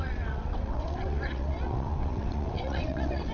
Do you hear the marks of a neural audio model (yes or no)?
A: yes